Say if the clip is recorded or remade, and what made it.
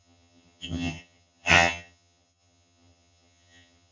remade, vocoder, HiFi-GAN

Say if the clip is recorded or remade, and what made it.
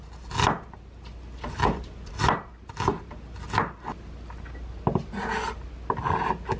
recorded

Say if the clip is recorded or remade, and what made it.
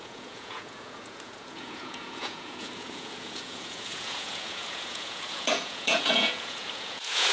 remade, vocoder, Vocos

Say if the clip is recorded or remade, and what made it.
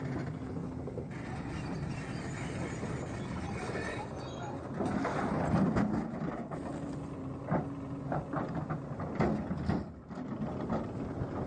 recorded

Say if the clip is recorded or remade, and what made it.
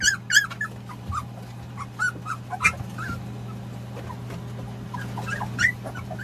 recorded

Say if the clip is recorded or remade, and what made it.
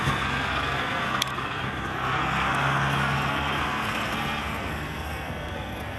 remade, codec, SNAC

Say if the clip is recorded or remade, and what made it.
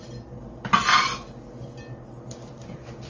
recorded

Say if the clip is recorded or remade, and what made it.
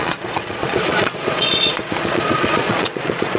remade, vocoder, Vocos